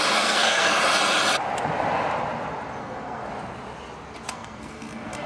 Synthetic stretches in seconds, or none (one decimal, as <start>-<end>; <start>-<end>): 0.0-0.7; 2.8-3.3; 4.3-5.3